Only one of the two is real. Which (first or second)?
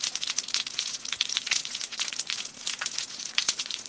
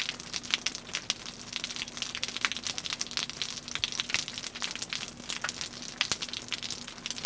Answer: second